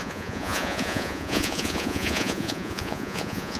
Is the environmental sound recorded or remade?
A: remade